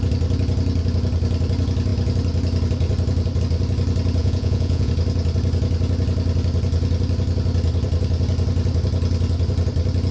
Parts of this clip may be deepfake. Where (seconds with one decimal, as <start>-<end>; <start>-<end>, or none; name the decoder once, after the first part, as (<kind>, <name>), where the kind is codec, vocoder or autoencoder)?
4.2-4.9 (vocoder, Vocos)